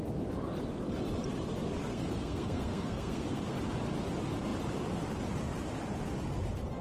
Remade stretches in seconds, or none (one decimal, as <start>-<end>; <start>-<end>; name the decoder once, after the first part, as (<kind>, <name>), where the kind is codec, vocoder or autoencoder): 1.9-3.4 (codec, SNAC)

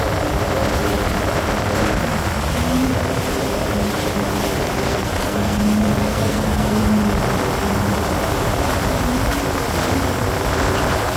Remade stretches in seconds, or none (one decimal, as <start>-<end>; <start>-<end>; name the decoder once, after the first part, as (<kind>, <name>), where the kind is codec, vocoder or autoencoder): 4.9-5.6 (codec, SNAC); 6.0-6.8

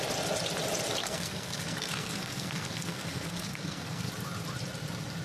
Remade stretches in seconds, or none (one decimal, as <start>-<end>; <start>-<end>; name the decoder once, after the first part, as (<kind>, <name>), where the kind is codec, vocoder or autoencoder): 1.0-4.1 (codec, SNAC)

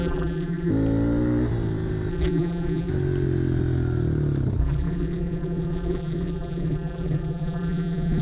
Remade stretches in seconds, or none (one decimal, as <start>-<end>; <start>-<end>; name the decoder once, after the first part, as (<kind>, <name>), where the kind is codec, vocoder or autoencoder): 0.0-0.7 (vocoder, BigVGAN v2); 2.1-2.9; 4.6-8.2

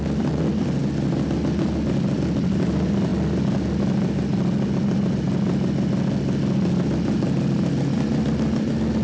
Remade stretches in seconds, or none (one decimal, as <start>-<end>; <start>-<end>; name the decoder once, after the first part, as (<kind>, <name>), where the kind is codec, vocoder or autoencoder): none